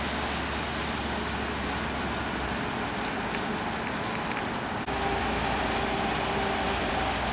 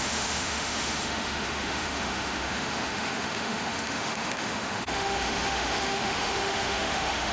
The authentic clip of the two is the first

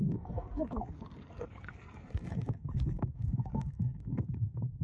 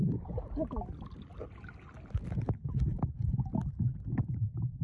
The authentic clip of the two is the second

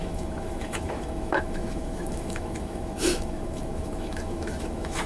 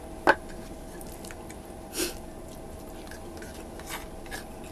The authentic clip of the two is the second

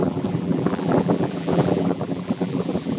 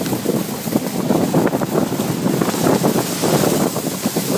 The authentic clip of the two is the second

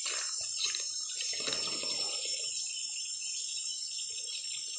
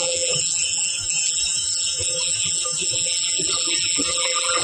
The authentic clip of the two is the first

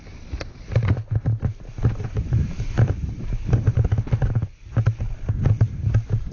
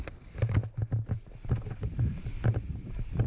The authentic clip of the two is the second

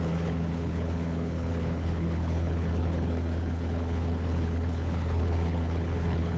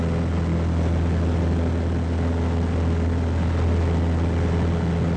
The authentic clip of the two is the second